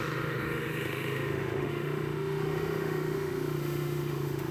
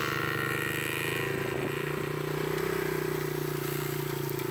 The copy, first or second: first